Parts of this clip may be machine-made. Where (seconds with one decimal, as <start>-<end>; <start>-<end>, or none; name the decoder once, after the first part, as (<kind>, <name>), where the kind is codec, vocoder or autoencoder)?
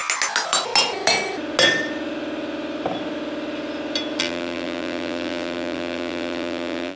4.2-7.0 (vocoder, BigVGAN v2)